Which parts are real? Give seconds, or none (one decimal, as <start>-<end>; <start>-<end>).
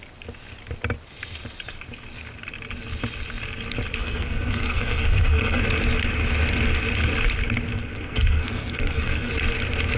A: 0.0-4.0; 5.6-7.7; 9.3-10.0